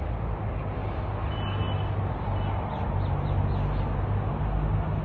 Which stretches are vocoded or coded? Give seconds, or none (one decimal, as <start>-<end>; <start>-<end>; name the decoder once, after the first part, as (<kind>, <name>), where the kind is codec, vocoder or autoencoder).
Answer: none